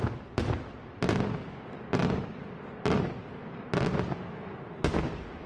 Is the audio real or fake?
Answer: real